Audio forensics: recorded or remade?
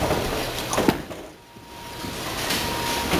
recorded